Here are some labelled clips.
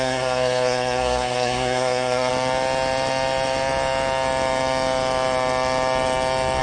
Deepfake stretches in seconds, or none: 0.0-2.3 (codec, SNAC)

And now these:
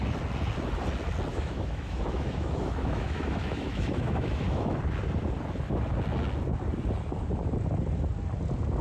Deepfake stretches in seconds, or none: 1.3-4.8 (autoencoder, DAC-VAE)

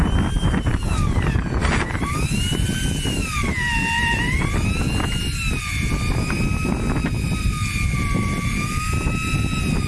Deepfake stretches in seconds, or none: none